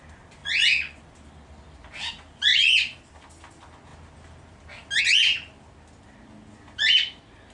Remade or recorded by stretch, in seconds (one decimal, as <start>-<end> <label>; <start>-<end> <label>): 0.0-0.4 recorded; 0.4-1.1 remade; 1.1-2.5 recorded; 2.5-3.1 remade; 3.1-7.5 recorded